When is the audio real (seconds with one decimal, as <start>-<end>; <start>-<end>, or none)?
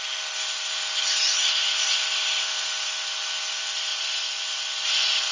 0.0-5.3